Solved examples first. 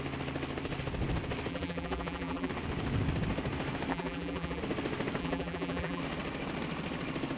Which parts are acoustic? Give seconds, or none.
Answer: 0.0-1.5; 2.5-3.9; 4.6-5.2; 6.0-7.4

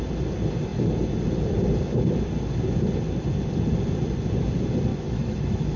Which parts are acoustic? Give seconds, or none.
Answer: 0.0-4.9

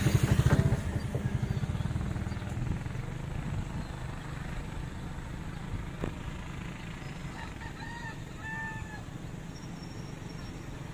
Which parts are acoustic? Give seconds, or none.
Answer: 0.0-10.9